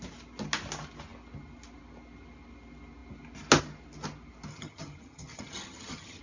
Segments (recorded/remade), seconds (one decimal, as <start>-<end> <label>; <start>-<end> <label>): 0.0-4.5 recorded; 4.5-6.2 remade

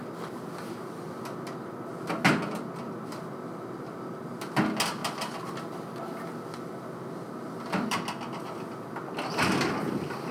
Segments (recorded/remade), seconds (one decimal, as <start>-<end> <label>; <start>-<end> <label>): 0.0-10.3 recorded